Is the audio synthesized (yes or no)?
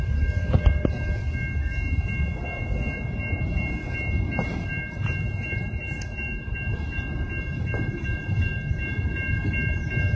no